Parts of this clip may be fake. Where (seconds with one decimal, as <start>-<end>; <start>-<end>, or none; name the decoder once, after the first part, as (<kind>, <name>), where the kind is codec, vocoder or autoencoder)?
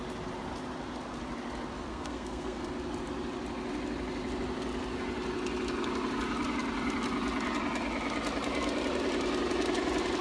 1.9-2.7 (codec, SNAC)